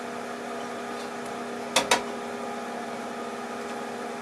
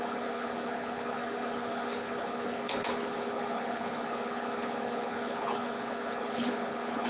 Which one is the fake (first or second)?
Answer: second